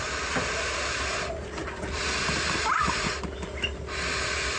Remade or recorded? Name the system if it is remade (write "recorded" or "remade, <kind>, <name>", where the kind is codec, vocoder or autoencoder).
recorded